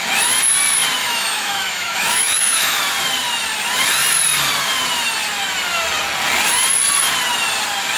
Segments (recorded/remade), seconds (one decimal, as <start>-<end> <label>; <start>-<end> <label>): 0.0-1.0 recorded; 1.0-2.8 remade; 2.8-8.0 recorded